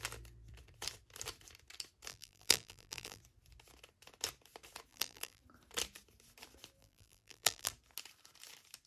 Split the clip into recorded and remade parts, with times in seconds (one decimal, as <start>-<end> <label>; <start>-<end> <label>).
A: 0.0-2.1 recorded; 2.1-3.2 remade; 3.2-4.9 recorded; 4.9-5.4 remade; 5.4-6.8 recorded; 6.8-7.7 remade; 7.7-8.9 recorded